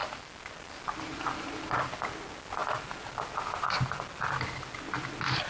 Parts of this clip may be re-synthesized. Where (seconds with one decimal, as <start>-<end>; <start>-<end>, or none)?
none